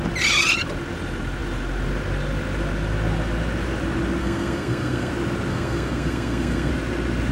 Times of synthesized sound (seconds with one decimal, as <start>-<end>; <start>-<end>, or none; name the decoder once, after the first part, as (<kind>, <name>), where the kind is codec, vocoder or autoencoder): 4.2-5.1 (codec, SNAC); 5.5-6.7